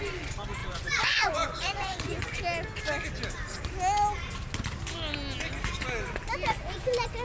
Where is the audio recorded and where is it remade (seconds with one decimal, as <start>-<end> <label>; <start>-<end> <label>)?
0.0-0.6 recorded; 0.6-2.4 remade; 2.4-7.2 recorded